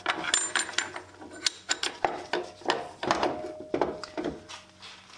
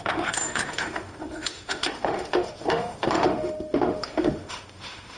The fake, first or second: second